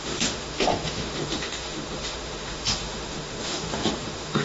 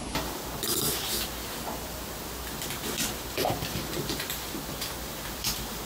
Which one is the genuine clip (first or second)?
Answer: second